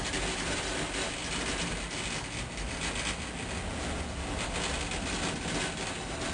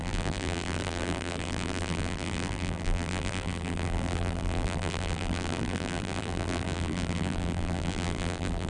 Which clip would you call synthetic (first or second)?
second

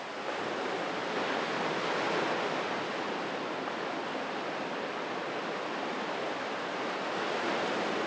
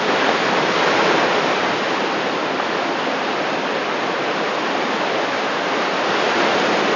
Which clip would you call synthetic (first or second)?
second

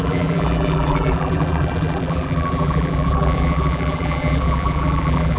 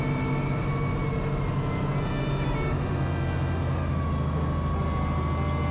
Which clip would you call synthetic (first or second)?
first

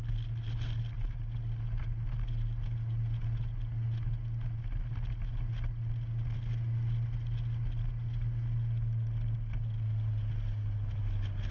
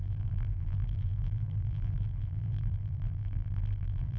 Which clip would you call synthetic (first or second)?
second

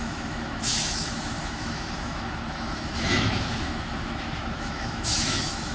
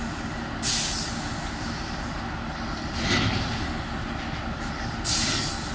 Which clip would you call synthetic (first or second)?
first